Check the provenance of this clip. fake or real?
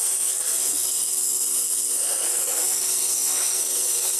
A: fake